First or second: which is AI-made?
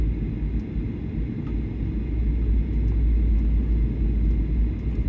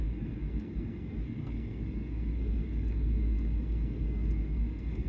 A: second